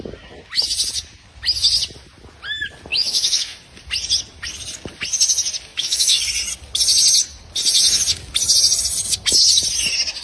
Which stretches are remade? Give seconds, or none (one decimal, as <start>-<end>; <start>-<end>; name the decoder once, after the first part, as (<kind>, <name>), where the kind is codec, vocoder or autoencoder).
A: 2.9-3.6 (autoencoder, DAC-VAE); 5.7-6.2

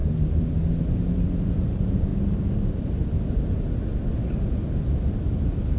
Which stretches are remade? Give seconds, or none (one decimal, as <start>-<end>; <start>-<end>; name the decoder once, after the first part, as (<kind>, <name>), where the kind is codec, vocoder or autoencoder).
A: 0.8-2.1 (vocoder, BigVGAN v2); 5.0-5.8

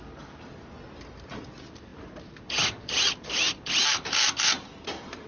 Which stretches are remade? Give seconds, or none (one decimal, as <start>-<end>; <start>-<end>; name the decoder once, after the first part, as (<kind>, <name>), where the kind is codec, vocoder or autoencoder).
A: none